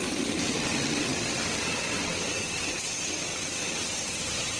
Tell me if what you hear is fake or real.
fake